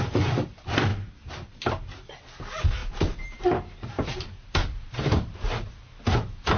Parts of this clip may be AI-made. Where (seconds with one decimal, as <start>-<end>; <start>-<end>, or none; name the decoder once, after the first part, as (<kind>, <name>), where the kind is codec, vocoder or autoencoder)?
0.9-1.7 (vocoder, BigVGAN v2); 2.8-5.7